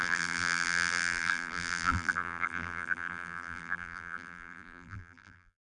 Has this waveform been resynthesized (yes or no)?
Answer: yes